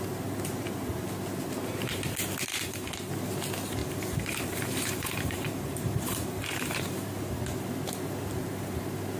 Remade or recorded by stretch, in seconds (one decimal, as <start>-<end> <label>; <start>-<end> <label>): 0.0-2.5 recorded; 2.5-3.1 remade; 3.1-3.8 recorded; 3.8-7.1 remade; 7.1-9.2 recorded